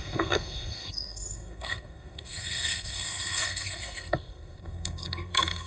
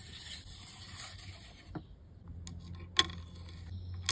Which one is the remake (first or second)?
first